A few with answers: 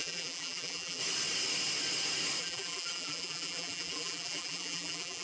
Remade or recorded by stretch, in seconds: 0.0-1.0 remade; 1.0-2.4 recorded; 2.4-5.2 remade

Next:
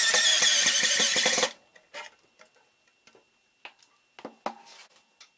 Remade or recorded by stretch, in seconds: 0.0-5.4 recorded

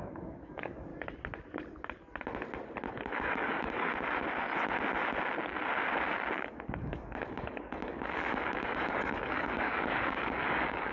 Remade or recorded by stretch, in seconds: 0.0-0.9 remade; 0.9-2.9 recorded; 2.9-3.9 remade; 3.9-6.3 recorded; 6.3-10.9 remade

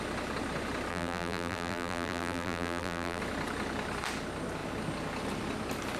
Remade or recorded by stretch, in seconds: 0.0-0.9 recorded; 0.9-3.2 remade; 3.2-6.0 recorded

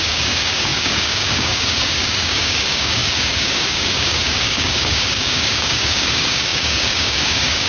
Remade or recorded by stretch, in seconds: 0.0-7.7 remade

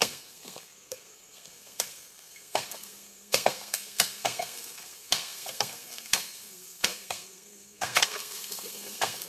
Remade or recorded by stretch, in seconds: 0.0-9.3 remade

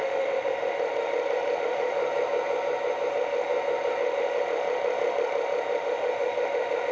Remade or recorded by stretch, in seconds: 0.0-2.0 remade; 2.0-3.1 recorded; 3.1-3.5 remade; 3.5-4.0 recorded; 4.0-6.9 remade

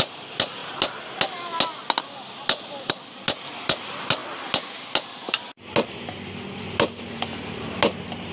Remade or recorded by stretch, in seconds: 0.0-8.3 recorded